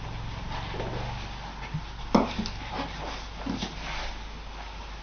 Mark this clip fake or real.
real